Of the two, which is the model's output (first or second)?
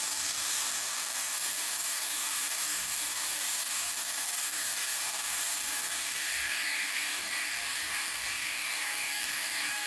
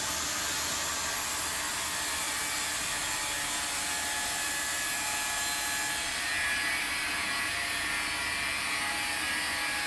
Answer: first